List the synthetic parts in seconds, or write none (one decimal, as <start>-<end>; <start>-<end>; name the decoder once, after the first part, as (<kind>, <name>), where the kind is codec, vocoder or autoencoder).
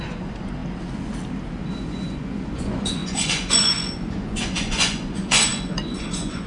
0.0-0.6 (vocoder, Vocos); 1.6-6.5